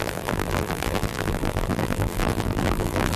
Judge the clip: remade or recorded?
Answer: remade